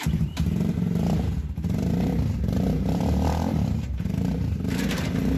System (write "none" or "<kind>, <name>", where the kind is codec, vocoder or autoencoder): vocoder, BigVGAN v2